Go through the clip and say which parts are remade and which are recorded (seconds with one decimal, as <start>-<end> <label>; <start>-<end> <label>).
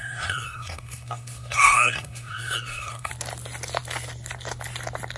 0.0-3.1 remade; 3.1-5.2 recorded